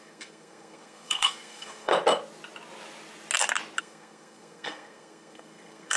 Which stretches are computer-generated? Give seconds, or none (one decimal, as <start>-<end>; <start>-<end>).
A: 0.0-1.9; 3.8-6.0